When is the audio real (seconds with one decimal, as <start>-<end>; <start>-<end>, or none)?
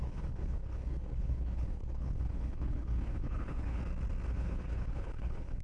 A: 3.8-4.3